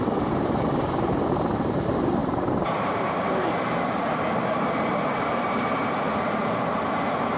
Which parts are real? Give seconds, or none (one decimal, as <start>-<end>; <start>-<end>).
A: none

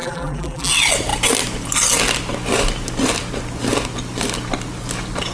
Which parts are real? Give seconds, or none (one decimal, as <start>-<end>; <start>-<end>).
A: 0.7-5.3

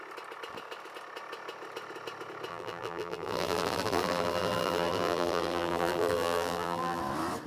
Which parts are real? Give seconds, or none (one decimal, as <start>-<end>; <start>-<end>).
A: 0.0-2.5; 7.0-7.5

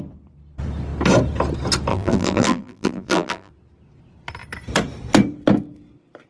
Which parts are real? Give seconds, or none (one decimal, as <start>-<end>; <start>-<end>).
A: 0.0-1.9; 3.5-6.3

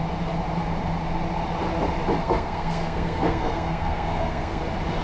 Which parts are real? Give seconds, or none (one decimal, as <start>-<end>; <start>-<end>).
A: 0.0-2.2; 4.6-5.0

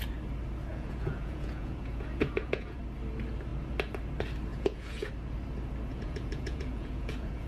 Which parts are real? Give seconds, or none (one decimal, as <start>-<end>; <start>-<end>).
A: 0.0-0.7; 2.8-4.5; 5.1-5.9

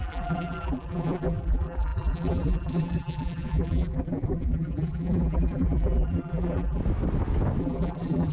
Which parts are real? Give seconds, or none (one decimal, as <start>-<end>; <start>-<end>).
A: 6.8-7.6